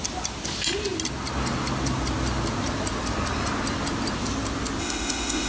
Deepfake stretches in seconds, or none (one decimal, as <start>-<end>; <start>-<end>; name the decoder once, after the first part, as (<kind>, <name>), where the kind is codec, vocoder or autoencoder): 4.8-5.5 (autoencoder, DAC-VAE)